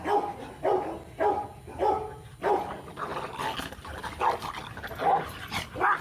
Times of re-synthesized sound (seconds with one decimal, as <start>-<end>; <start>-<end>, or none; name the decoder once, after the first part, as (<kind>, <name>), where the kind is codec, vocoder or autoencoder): none